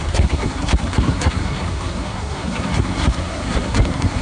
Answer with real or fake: fake